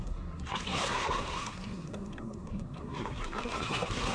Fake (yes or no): yes